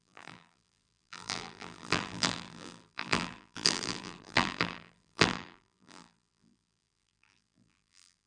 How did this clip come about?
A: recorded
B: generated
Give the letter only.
B